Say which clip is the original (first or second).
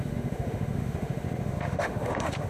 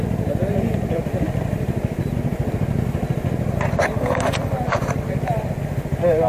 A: second